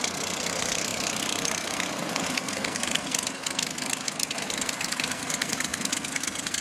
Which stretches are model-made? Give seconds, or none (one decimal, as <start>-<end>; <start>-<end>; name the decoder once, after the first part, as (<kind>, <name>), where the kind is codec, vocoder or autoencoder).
0.0-6.6 (codec, SNAC)

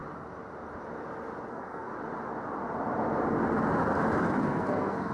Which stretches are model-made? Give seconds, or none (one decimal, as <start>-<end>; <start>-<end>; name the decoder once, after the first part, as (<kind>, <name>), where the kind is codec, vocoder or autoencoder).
1.5-1.9 (codec, SNAC); 4.4-5.1

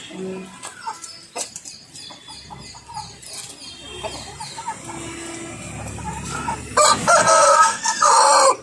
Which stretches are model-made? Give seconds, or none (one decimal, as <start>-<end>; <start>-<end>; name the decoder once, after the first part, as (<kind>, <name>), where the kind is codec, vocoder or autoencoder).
7.2-8.1 (codec, SNAC)

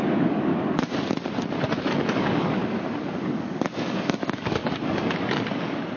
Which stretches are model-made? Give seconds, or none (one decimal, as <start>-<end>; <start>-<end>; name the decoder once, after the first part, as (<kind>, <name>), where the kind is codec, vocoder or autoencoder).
0.0-0.5 (codec, DAC); 1.8-2.6; 3.2-6.0

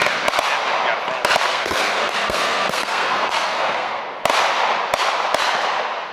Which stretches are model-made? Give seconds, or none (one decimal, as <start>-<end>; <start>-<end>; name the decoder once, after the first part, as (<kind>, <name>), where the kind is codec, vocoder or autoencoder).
1.5-4.0 (codec, SNAC)